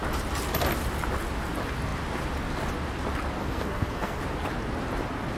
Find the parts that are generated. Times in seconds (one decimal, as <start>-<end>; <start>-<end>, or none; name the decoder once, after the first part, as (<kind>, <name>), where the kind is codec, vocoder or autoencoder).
3.4-4.2 (codec, SNAC)